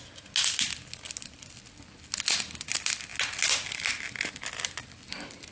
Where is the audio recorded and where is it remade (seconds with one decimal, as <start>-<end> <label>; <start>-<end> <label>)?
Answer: 0.0-5.5 recorded

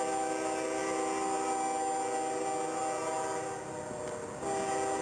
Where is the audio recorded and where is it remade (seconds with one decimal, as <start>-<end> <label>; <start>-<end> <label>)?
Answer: 0.0-5.0 recorded

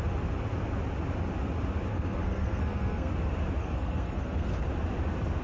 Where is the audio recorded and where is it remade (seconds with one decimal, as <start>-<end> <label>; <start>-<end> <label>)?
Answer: 0.0-1.9 recorded; 1.9-3.1 remade; 3.1-3.6 recorded; 3.6-4.5 remade; 4.5-5.4 recorded

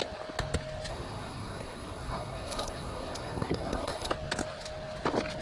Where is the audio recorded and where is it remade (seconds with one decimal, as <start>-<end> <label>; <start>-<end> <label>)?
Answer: 0.0-0.9 recorded; 0.9-4.1 remade; 4.1-5.4 recorded

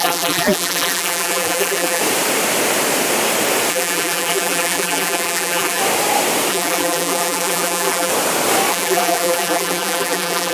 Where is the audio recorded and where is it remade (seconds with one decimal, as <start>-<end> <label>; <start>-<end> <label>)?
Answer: 0.0-2.0 remade; 2.0-3.7 recorded; 3.7-5.8 remade; 5.8-6.5 recorded; 6.5-8.1 remade; 8.1-8.7 recorded; 8.7-10.5 remade

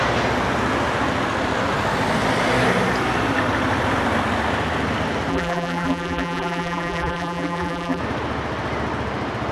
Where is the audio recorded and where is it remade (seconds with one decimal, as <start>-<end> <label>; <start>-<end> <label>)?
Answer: 0.0-5.3 recorded; 5.3-8.0 remade; 8.0-9.5 recorded

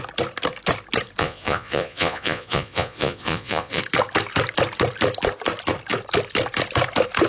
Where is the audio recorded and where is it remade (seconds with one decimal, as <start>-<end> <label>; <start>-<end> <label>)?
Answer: 0.0-1.2 recorded; 1.2-3.8 remade; 3.8-7.3 recorded